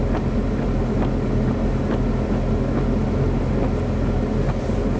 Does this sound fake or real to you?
real